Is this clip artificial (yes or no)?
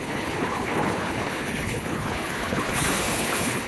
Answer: yes